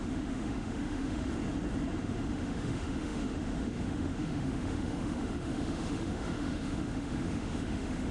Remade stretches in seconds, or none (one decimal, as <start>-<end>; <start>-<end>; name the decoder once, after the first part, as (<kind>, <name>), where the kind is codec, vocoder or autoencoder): 0.0-1.3 (autoencoder, DAC-VAE); 2.0-8.1

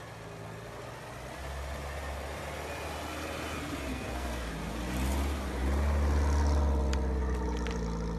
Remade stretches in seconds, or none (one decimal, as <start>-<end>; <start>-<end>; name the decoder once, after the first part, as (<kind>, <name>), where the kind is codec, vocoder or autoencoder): 3.9-4.5 (codec, SNAC)

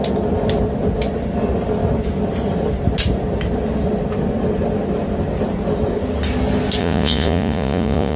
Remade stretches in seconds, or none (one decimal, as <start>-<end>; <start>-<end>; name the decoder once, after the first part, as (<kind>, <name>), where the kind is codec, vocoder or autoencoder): 6.8-8.2 (vocoder, Vocos)

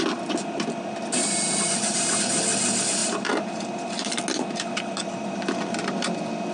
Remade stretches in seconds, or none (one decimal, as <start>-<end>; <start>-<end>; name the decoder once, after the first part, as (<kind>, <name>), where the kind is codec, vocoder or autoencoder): 1.2-2.4 (vocoder, BigVGAN v2); 3.0-4.2

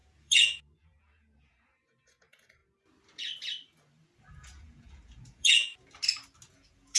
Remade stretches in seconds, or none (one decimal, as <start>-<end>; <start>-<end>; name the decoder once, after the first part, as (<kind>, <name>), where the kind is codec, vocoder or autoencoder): 0.0-2.6 (vocoder, Vocos); 4.3-5.7; 6.5-7.0

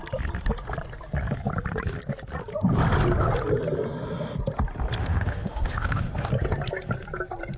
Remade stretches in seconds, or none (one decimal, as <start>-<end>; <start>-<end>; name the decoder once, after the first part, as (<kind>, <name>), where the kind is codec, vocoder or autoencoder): 5.0-6.3 (autoencoder, DAC-VAE)

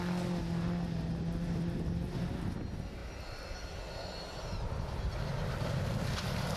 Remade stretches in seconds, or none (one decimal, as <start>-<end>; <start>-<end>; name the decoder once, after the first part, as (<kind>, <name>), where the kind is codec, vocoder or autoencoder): none

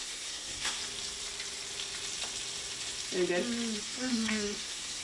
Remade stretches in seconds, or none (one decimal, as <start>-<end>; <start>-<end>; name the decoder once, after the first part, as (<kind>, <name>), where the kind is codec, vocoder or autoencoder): 0.0-0.8 (codec, SNAC); 3.8-5.0